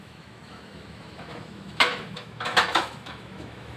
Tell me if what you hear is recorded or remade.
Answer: remade